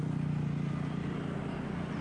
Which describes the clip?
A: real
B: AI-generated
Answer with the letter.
A